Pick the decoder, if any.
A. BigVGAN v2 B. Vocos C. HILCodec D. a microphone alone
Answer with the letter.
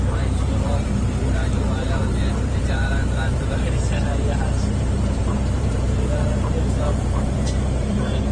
A